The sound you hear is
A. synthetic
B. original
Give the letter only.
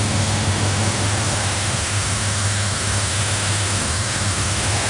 A